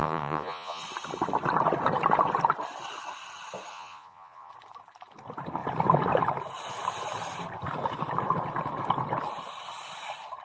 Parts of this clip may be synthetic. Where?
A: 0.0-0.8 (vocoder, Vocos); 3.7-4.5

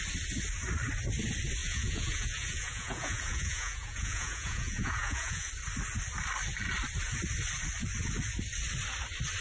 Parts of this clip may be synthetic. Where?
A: 1.6-5.5 (vocoder, Vocos)

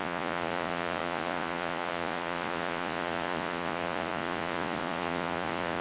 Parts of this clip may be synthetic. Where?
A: 0.0-5.8 (vocoder, Vocos)